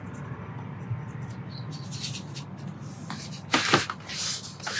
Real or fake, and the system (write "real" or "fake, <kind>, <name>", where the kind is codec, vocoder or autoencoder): real